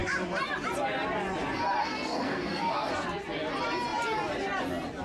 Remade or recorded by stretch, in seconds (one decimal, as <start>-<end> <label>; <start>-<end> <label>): 0.0-1.8 recorded; 1.8-2.9 remade; 2.9-5.0 recorded